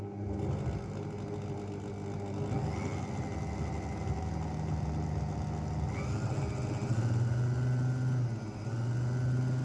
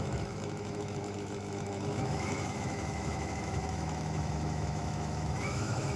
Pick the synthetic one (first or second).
second